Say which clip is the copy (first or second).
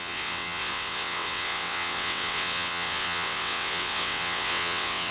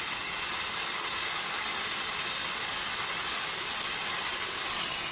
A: first